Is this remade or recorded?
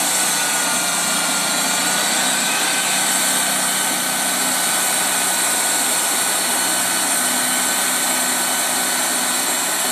recorded